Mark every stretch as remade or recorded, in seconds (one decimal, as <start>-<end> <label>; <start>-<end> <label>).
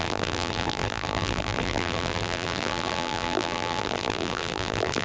0.0-5.0 remade